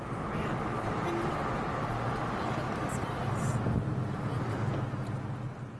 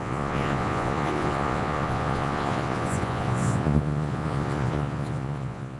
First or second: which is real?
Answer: first